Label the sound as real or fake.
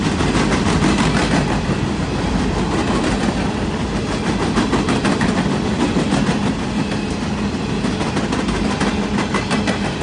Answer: real